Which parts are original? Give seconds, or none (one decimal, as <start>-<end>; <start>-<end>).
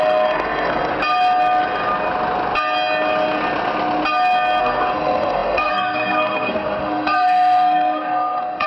0.9-4.6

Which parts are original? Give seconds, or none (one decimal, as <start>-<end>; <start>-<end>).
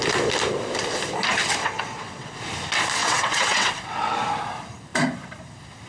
0.0-1.6; 2.4-3.0; 4.2-5.9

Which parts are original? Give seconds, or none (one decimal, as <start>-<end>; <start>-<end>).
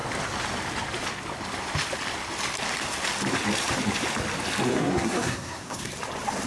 0.0-4.7; 5.9-6.5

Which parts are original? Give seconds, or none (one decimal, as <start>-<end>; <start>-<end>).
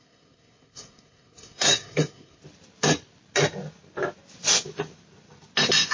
2.4-5.9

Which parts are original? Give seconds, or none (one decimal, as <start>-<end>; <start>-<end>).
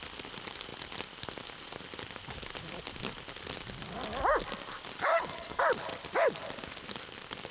0.0-5.1; 5.6-7.5